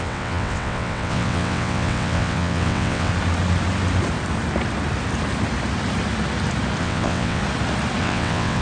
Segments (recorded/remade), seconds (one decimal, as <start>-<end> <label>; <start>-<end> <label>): 0.0-3.1 remade; 3.1-6.8 recorded; 6.8-7.4 remade; 7.4-8.0 recorded; 8.0-8.6 remade